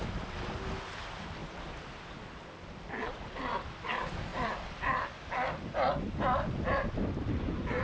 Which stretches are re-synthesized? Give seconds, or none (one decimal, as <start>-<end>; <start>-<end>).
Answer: 4.3-5.9